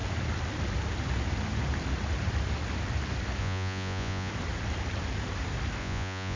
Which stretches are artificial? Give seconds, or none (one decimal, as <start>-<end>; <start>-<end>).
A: 3.4-4.3; 5.8-6.4